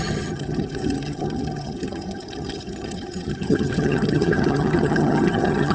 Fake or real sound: fake